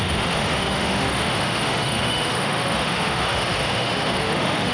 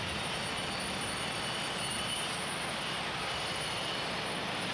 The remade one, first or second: first